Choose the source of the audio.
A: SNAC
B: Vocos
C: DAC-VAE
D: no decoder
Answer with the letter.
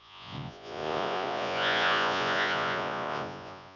B